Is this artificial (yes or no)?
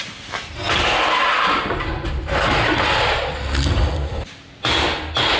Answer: no